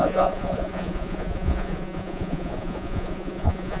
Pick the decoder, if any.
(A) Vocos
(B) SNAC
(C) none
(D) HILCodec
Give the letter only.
A